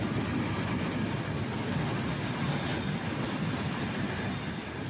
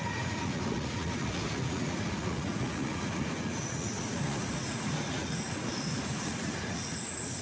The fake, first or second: second